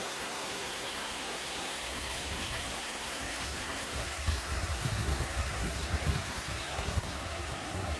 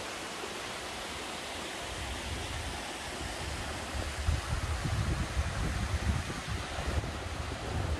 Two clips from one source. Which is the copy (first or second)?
first